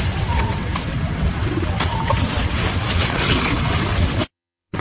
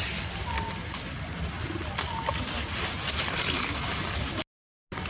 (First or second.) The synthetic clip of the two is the first